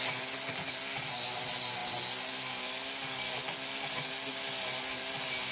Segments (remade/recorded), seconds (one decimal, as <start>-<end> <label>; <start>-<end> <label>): 0.0-5.5 recorded